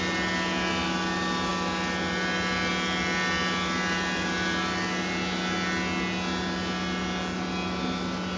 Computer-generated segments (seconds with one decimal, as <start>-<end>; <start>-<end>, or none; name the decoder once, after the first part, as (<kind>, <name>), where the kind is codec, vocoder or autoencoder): none